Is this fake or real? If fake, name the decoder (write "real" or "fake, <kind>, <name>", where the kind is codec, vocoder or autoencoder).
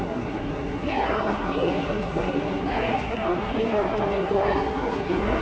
fake, codec, SNAC